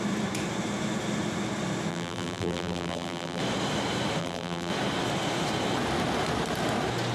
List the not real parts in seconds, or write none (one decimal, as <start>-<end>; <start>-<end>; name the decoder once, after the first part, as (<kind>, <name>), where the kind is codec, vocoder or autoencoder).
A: 1.9-3.4 (vocoder, BigVGAN v2); 4.2-4.7